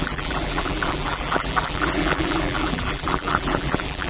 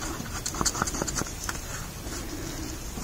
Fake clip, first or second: first